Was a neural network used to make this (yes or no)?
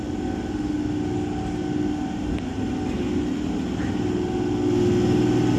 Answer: no